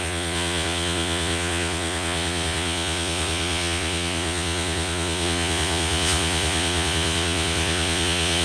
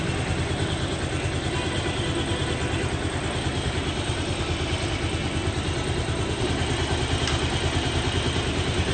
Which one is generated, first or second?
first